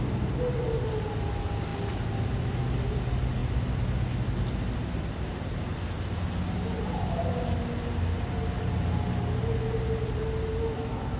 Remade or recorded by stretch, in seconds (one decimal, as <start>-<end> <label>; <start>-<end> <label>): 0.0-11.2 recorded